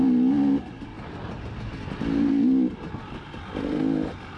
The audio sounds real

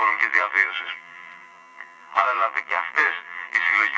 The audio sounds fake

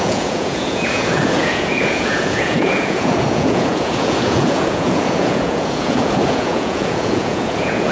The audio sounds fake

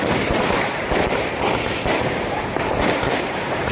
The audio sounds fake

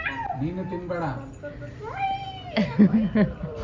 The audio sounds real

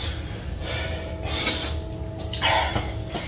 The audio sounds real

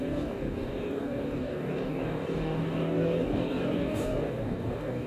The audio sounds fake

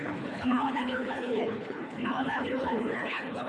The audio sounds fake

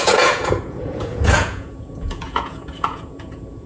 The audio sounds fake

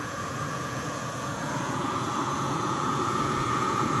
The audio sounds fake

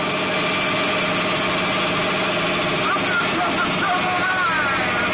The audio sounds real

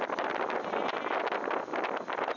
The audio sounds real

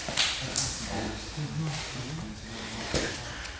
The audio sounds real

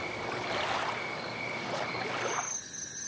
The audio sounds real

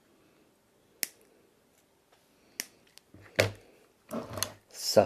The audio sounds real